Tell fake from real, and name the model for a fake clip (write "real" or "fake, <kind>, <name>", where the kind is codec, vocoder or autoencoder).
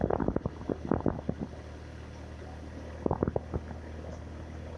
real